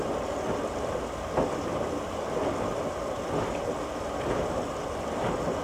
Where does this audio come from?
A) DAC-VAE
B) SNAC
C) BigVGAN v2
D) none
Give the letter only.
D